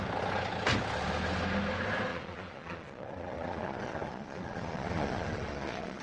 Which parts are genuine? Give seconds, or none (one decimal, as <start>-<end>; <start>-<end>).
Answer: 0.0-2.1